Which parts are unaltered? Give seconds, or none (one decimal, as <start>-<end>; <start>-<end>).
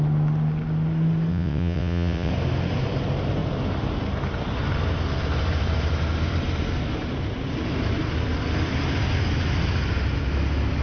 0.0-1.3; 2.3-10.8